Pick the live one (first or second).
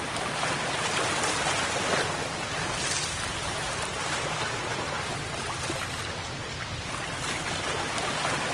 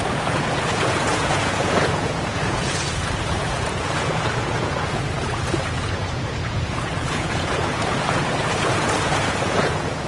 first